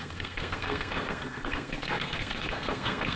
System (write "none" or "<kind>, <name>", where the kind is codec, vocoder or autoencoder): codec, SNAC